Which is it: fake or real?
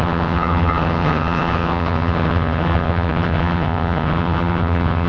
fake